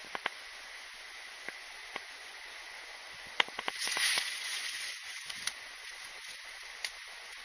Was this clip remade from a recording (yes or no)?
yes